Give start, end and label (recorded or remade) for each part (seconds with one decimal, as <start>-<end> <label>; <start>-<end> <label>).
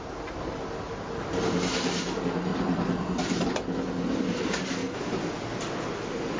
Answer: 0.0-2.5 recorded; 2.5-3.5 remade; 3.5-6.4 recorded